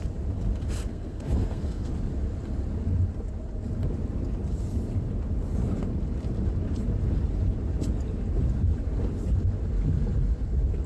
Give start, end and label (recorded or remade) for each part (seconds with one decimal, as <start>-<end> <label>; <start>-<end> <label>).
0.0-0.9 recorded; 0.9-1.9 remade; 1.9-10.9 recorded